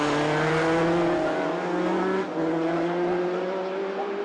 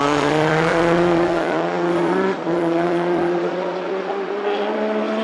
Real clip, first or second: first